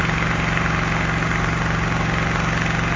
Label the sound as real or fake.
real